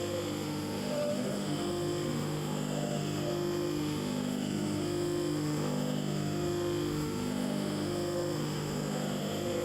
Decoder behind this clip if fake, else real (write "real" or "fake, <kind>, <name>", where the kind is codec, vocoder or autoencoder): fake, autoencoder, DAC-VAE